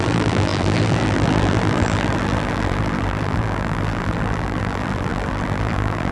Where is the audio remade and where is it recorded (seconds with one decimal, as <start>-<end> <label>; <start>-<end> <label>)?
0.0-6.1 remade